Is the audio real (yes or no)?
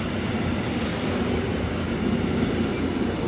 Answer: yes